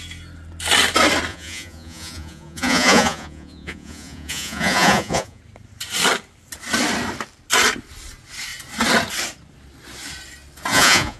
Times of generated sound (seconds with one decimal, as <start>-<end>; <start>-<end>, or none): 1.3-5.4; 10.7-11.2

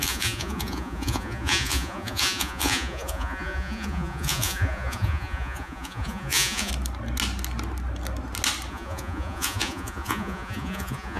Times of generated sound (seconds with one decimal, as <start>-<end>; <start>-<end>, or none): 0.0-6.7; 8.7-11.2